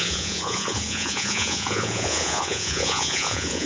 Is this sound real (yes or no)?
no